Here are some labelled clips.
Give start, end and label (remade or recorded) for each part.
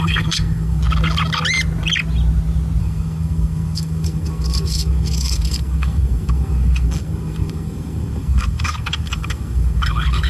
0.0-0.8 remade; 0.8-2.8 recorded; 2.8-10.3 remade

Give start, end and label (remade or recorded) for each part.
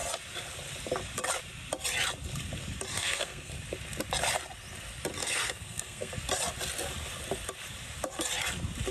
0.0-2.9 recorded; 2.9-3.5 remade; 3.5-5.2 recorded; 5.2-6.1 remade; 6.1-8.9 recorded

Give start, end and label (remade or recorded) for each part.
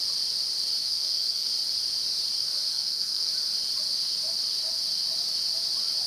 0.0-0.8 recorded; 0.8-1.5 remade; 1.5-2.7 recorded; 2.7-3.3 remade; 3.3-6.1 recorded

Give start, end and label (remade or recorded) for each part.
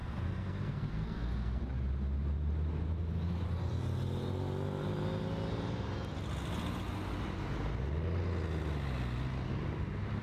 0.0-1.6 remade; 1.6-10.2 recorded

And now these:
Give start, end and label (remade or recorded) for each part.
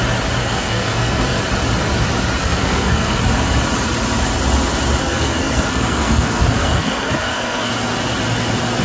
0.0-0.4 recorded; 0.4-1.4 remade; 1.4-2.4 recorded; 2.4-3.2 remade; 3.2-5.0 recorded; 5.0-7.7 remade; 7.7-8.8 recorded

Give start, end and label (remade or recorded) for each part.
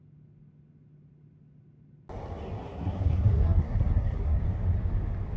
0.0-2.6 recorded; 2.6-4.4 remade; 4.4-5.4 recorded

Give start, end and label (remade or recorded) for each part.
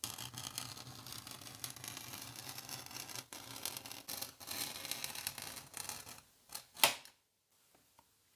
0.0-8.4 recorded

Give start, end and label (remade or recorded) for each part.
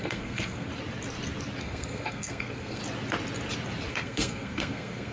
0.0-0.7 remade; 0.7-1.6 recorded; 1.6-2.8 remade; 2.8-3.9 recorded; 3.9-5.1 remade